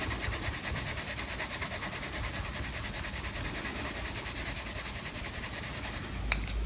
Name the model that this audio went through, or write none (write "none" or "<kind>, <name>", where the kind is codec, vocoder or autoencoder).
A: none